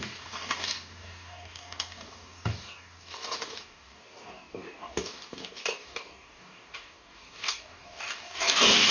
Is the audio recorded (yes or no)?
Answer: no